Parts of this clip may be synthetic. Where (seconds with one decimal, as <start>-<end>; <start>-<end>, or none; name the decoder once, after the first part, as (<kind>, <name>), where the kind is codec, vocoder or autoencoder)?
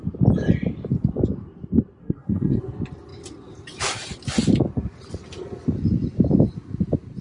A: 2.0-2.6 (codec, SNAC)